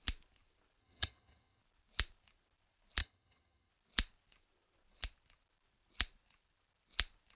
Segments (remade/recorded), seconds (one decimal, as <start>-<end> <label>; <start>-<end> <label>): 0.0-0.8 recorded; 0.8-1.6 remade; 1.6-3.0 recorded; 3.0-3.7 remade; 3.7-7.4 recorded